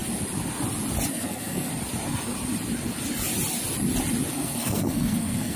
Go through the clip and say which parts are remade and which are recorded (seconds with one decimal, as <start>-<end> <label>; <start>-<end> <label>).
0.0-1.1 recorded; 1.1-1.7 remade; 1.7-4.3 recorded; 4.3-5.6 remade